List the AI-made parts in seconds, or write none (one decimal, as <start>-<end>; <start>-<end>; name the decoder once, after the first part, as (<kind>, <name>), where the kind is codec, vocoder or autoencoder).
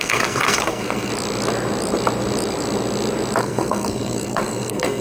0.0-1.1 (codec, SNAC); 3.4-5.0